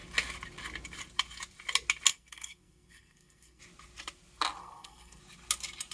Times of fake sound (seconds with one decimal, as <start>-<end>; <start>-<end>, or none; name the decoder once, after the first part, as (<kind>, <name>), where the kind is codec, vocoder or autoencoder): 2.1-3.6 (codec, SNAC); 4.6-5.2